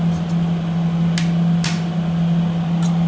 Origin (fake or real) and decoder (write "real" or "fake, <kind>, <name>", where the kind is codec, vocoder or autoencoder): real